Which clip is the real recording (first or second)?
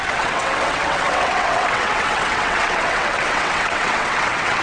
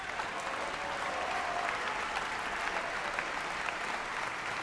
second